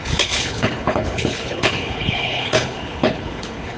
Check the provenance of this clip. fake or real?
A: fake